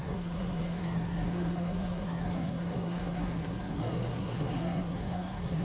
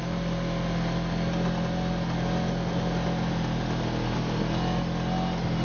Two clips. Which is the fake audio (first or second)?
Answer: first